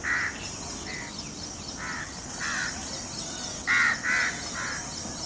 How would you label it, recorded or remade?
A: recorded